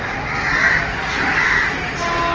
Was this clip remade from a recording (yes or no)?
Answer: no